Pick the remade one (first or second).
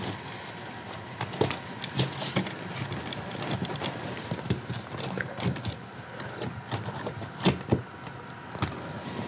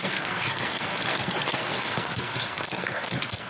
second